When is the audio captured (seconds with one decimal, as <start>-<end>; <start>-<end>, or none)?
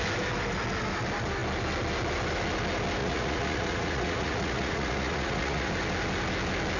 0.0-3.0; 5.7-6.8